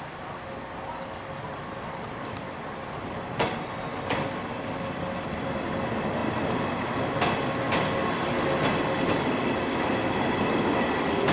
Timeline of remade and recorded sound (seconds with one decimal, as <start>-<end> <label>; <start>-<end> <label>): 0.0-11.3 recorded